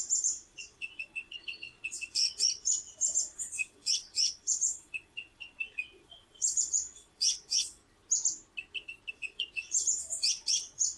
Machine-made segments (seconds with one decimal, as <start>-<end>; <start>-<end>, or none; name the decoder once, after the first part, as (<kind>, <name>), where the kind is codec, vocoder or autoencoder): 0.0-7.8 (vocoder, Vocos); 9.1-11.0